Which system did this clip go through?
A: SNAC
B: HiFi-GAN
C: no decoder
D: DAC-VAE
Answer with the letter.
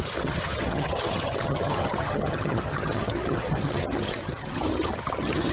B